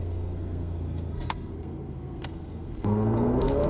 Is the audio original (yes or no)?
no